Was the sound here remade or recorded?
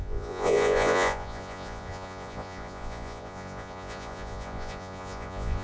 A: remade